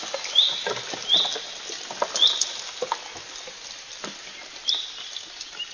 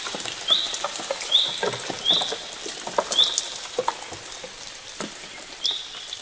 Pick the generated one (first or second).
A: second